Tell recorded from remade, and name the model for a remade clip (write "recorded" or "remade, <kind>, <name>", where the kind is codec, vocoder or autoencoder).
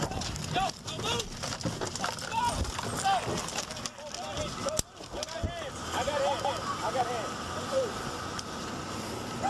recorded